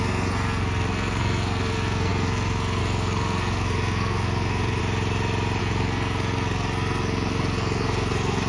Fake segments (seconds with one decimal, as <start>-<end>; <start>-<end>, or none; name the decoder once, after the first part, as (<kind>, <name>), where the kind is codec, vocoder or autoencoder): 0.0-4.8 (codec, SNAC); 5.6-8.5